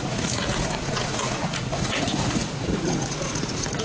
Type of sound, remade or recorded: remade